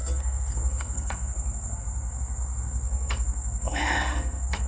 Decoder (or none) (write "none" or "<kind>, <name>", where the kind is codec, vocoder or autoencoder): codec, SNAC